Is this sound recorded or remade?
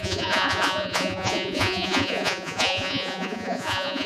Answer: remade